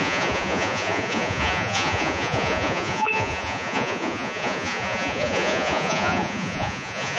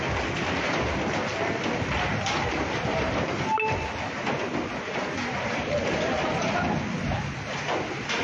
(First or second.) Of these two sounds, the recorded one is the second